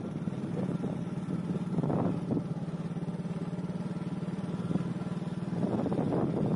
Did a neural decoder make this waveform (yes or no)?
no